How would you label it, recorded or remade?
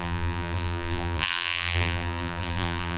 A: remade